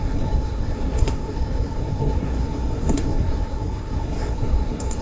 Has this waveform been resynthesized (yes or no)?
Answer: yes